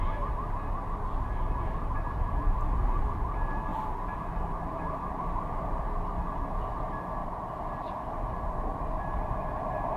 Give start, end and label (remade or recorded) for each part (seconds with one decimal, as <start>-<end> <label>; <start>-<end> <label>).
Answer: 0.0-3.7 recorded; 3.7-5.7 remade; 5.7-7.2 recorded; 7.2-7.9 remade; 7.9-10.0 recorded